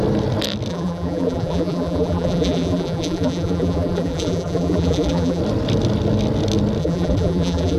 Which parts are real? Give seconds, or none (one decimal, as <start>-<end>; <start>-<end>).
0.0-0.7; 5.4-6.8